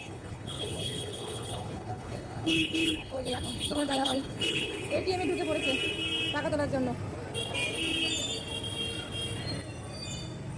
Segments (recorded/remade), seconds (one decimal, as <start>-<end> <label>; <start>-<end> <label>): 0.0-5.1 remade; 5.1-10.6 recorded